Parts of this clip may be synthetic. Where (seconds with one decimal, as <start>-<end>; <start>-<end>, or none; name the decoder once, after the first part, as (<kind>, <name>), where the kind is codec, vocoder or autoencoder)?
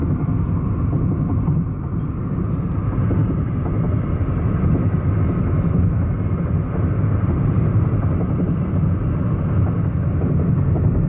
none